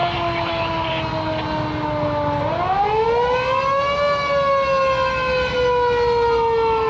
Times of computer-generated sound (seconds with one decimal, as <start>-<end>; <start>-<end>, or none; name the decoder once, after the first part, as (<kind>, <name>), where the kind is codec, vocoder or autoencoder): none